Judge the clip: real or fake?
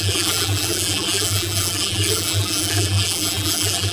fake